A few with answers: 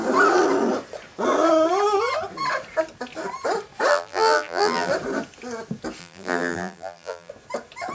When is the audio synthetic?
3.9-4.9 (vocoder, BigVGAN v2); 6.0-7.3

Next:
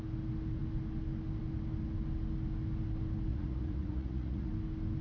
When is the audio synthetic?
3.3-4.5 (vocoder, Vocos)

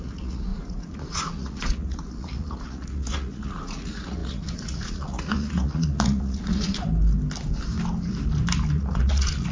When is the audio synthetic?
0.0-6.7 (vocoder, Vocos); 8.7-9.5